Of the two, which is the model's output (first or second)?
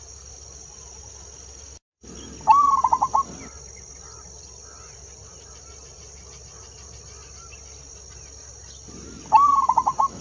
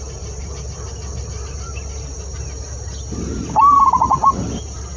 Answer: second